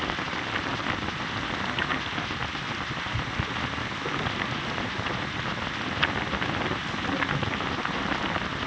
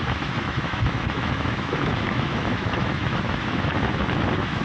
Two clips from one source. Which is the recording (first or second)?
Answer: first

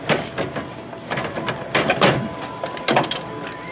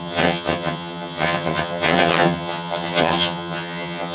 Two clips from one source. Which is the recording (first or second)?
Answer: first